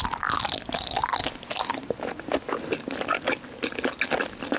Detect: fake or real real